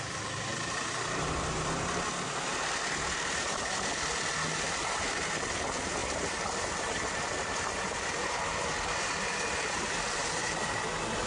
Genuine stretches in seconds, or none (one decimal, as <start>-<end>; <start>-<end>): 0.0-0.5; 1.7-4.8; 5.5-6.0; 10.8-11.3

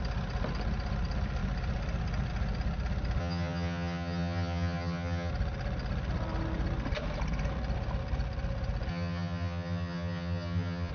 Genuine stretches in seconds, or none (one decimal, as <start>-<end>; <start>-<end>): 0.0-3.2; 5.3-8.9

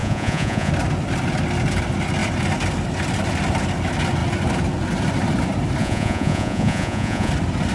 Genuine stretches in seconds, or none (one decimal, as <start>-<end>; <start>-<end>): 0.7-5.8; 7.3-7.7

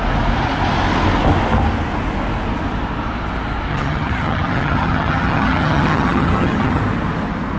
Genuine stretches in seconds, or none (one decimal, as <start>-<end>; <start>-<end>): 0.0-3.7; 6.8-7.6

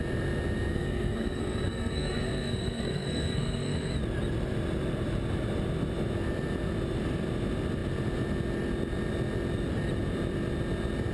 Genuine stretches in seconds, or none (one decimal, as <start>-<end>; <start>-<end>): 0.0-0.7; 3.9-11.1

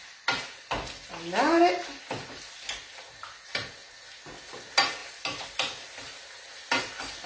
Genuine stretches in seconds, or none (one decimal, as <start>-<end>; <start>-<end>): 0.0-7.3